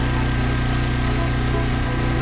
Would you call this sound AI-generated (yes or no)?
no